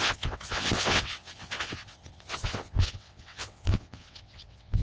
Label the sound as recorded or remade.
remade